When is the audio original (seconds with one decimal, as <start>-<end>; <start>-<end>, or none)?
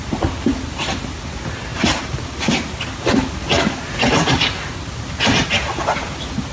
0.0-6.5